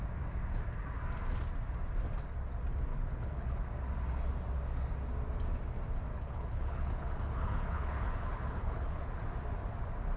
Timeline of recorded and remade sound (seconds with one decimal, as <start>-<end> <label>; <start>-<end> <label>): 0.0-2.9 recorded; 2.9-3.6 remade; 3.6-6.1 recorded; 6.1-9.2 remade; 9.2-10.2 recorded